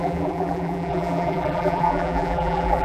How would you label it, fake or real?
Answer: fake